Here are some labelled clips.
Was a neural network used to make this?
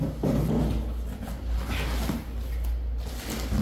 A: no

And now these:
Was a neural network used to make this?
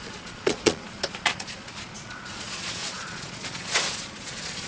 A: yes